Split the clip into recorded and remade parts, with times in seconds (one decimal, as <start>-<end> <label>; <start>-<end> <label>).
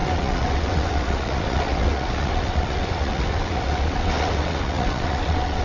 0.0-5.6 remade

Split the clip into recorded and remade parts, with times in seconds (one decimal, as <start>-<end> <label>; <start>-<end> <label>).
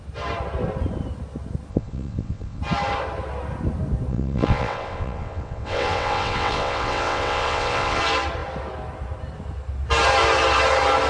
0.0-1.7 recorded; 1.7-2.6 remade; 2.6-4.1 recorded; 4.1-8.0 remade; 8.0-11.1 recorded